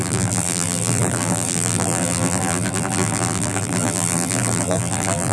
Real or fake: fake